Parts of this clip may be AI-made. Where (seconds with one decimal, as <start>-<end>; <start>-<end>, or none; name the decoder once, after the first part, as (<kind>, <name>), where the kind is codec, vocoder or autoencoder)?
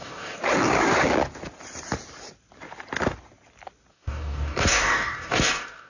0.0-0.4 (codec, DAC); 3.9-5.9